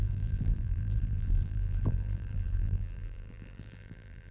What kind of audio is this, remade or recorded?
remade